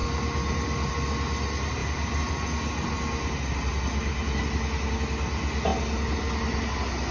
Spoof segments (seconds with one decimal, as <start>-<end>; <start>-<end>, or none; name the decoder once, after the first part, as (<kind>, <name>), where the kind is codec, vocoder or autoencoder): none